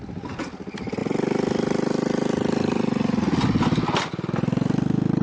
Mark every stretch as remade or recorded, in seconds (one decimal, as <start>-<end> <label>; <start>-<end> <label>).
0.0-5.2 recorded